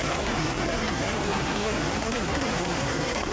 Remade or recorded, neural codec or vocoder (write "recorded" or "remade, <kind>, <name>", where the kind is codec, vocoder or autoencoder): remade, codec, SNAC